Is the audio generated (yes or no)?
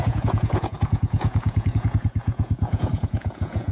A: yes